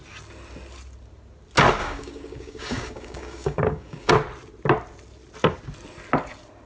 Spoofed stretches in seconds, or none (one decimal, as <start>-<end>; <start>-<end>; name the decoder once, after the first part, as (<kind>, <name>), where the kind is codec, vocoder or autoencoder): 1.8-4.1 (codec, DAC)